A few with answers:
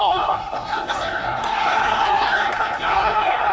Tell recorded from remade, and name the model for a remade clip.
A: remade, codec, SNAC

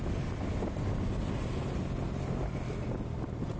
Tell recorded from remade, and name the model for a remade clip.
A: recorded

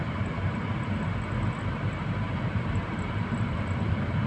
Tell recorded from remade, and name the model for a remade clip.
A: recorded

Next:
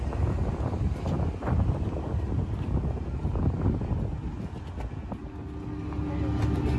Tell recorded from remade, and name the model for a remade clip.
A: recorded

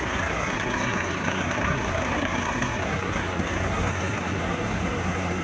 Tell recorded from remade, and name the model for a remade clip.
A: remade, codec, SNAC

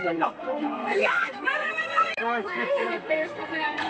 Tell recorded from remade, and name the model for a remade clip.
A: remade, codec, SNAC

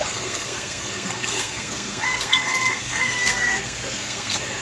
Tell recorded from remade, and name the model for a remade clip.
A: remade, codec, SNAC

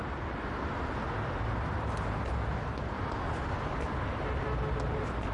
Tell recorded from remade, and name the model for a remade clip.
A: recorded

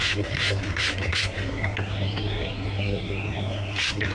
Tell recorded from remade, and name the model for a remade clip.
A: remade, codec, SNAC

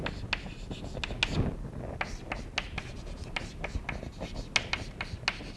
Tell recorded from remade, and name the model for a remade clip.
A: recorded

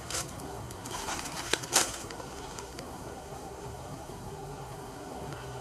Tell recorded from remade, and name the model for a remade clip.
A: remade, codec, SNAC